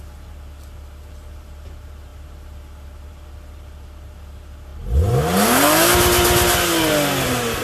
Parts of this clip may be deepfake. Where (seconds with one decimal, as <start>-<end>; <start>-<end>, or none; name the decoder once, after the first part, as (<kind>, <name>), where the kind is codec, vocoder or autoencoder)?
none